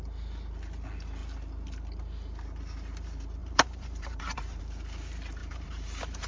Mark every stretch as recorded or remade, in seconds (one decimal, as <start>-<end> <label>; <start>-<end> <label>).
0.0-3.4 recorded; 3.4-4.6 remade; 4.6-5.4 recorded; 5.4-6.3 remade